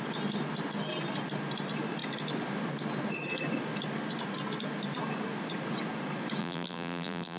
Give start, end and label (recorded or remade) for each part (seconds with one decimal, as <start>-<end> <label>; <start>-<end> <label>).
0.0-6.4 recorded; 6.4-7.4 remade